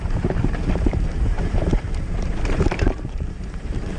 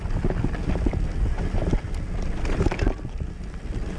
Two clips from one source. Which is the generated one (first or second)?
first